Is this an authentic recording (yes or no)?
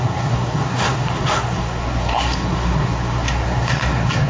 no